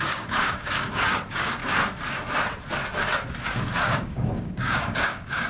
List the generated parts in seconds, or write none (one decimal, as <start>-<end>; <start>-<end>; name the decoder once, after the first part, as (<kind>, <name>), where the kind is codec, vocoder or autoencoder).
0.0-1.6 (codec, DAC); 3.4-5.5